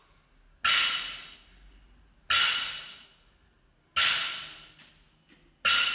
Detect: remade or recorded recorded